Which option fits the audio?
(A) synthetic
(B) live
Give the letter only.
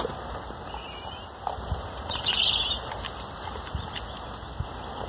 B